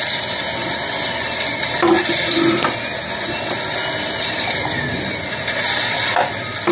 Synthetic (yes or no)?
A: no